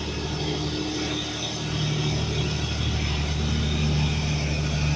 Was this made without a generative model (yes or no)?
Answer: yes